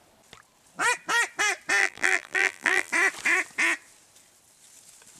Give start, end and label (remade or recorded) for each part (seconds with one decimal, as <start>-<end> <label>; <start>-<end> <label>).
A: 0.0-1.8 recorded; 1.8-2.9 remade; 2.9-5.2 recorded